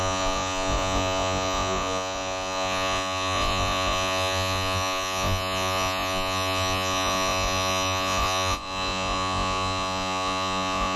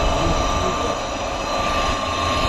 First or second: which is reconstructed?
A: first